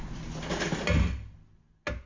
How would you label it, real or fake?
real